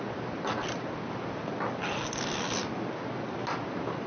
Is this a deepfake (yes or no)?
no